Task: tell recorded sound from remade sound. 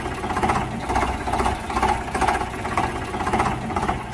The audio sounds remade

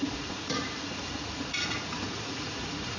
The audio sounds remade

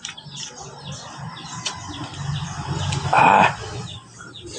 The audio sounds recorded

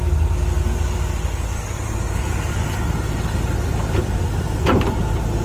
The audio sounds recorded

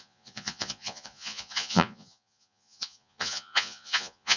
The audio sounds remade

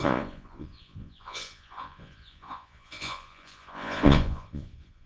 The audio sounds remade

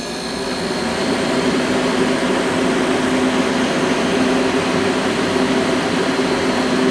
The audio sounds recorded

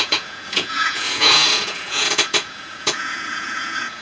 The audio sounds remade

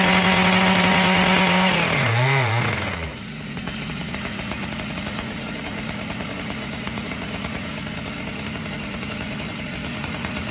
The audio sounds remade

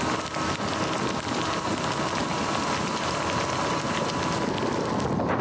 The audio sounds recorded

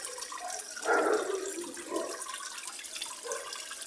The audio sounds recorded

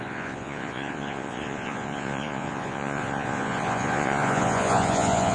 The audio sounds remade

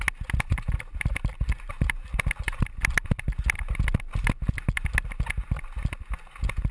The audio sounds recorded